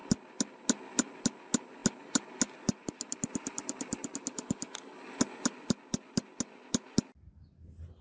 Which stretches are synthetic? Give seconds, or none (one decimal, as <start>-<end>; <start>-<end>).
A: none

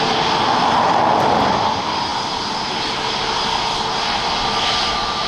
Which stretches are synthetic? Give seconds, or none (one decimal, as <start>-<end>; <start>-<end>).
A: none

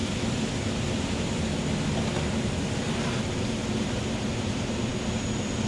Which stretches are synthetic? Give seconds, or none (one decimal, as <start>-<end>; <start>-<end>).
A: 2.4-3.6; 4.1-5.7

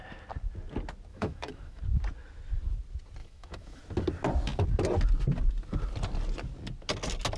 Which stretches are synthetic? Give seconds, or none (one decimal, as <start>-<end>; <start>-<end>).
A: 1.1-1.8; 3.2-3.8

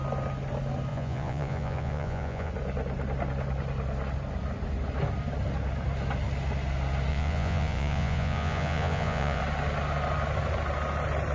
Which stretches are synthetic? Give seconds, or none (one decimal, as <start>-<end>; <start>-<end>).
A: 0.9-2.5; 7.1-9.4

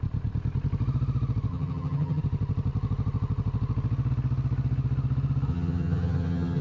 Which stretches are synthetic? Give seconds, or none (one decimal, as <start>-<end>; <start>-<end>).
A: 1.5-2.2; 5.5-6.6